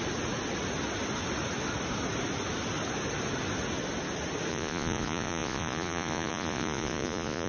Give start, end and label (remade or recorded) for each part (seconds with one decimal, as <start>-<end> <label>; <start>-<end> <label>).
0.0-4.5 recorded; 4.5-7.5 remade